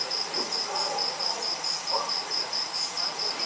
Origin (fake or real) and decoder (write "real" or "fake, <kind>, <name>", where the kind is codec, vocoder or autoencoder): fake, vocoder, Vocos